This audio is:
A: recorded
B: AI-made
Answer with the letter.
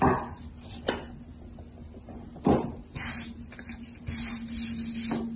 A